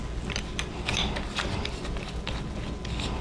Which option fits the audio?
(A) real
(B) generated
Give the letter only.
A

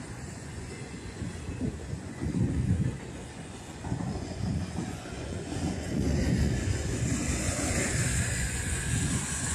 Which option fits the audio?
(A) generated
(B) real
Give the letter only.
A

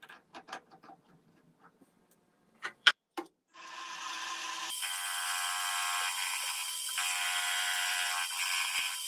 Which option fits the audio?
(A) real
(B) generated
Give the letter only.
B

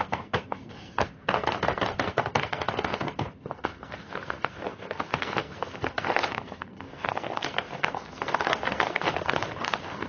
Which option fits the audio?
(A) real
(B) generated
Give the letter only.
B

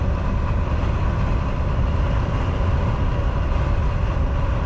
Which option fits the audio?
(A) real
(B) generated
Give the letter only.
B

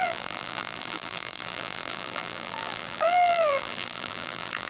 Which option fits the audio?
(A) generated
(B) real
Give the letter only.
A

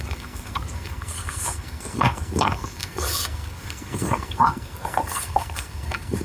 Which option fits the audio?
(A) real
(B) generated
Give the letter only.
B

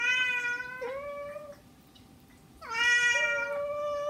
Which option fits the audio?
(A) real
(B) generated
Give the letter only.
A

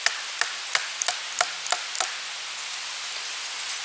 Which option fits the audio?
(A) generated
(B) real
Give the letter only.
B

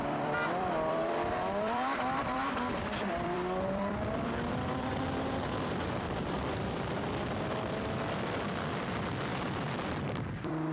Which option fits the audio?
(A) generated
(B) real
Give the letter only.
A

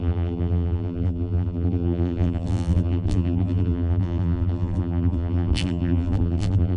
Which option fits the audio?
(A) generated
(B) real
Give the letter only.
A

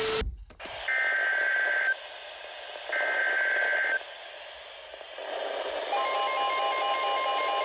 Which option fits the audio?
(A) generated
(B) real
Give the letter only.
B